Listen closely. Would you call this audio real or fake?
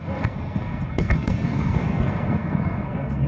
fake